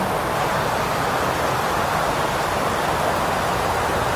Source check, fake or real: real